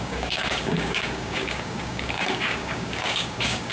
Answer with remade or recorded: remade